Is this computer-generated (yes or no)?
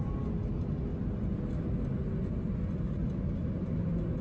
no